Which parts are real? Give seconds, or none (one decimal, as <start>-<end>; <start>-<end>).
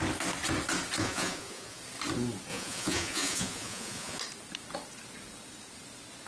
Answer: 0.0-1.0; 1.8-2.5; 4.2-6.3